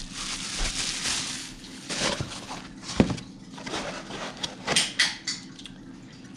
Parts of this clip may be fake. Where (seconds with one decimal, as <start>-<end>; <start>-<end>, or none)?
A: 1.4-2.6